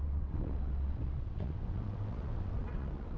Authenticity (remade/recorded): remade